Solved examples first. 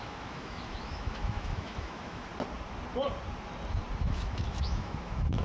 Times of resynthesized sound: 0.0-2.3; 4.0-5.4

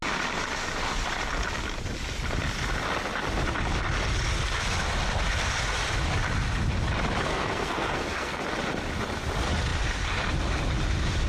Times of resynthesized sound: 7.3-8.4